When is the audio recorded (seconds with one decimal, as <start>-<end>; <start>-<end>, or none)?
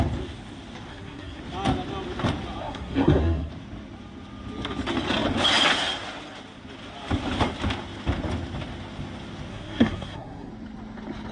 0.0-0.9; 1.4-2.6; 3.5-9.5; 10.5-11.3